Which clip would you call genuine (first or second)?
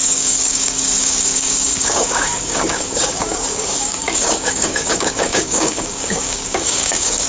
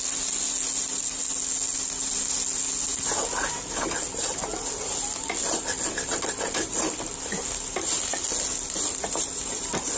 second